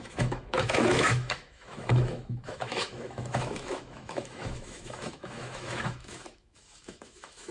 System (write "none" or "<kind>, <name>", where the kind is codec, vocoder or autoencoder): autoencoder, DAC-VAE